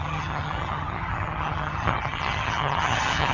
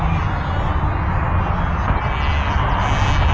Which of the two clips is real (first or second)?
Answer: second